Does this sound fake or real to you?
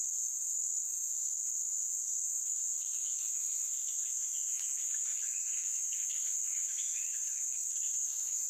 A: fake